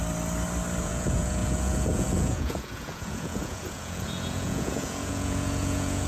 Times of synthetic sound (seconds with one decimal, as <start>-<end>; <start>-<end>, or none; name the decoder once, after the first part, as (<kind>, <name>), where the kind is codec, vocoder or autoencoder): 0.8-6.1 (vocoder, Vocos)